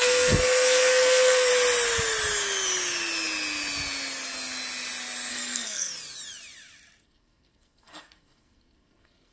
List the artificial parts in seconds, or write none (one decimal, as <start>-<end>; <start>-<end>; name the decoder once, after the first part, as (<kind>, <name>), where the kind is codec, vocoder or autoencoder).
0.0-1.5 (codec, SNAC); 5.3-5.9; 7.0-9.3